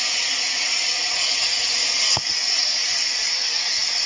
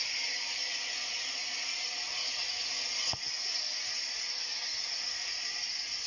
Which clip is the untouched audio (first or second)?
second